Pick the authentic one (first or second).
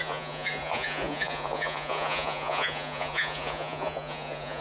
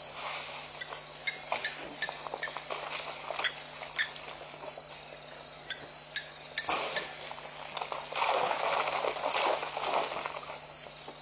second